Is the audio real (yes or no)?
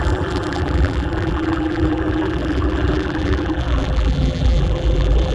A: no